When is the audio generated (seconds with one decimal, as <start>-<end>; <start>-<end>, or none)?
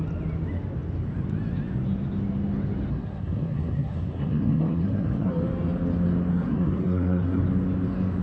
2.9-5.3; 6.3-7.4